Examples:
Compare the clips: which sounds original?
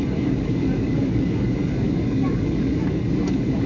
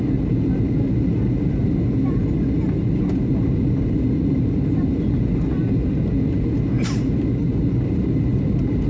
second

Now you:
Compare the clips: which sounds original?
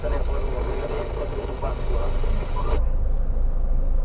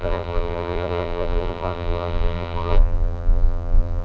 first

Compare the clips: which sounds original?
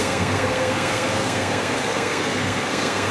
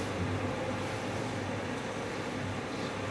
second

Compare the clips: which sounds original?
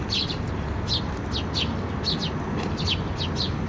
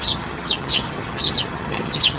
first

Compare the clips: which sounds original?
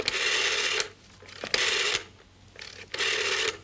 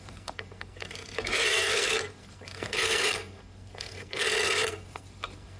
first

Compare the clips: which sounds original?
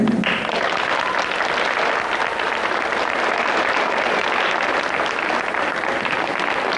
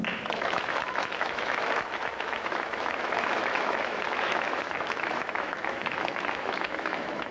first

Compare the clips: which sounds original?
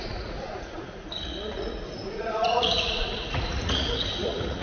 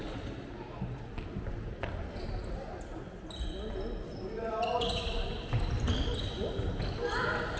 second